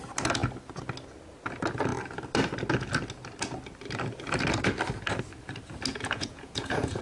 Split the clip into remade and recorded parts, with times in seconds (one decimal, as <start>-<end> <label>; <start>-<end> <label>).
0.0-5.9 recorded; 5.9-7.0 remade